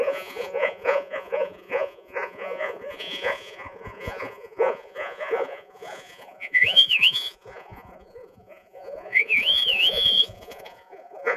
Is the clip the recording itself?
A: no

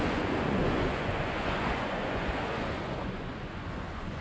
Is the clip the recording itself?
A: no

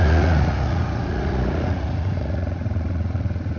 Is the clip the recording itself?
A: no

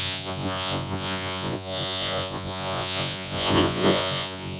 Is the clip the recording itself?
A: no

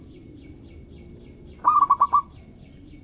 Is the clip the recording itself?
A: yes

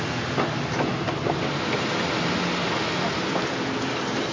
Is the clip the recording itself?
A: yes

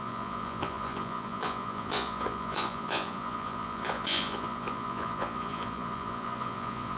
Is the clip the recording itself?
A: no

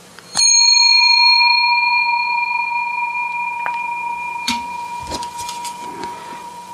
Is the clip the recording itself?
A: no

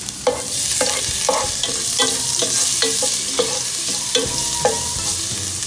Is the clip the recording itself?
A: yes